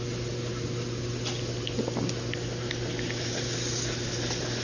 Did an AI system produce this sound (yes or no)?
no